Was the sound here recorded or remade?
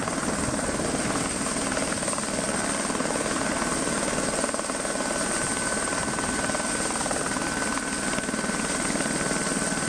recorded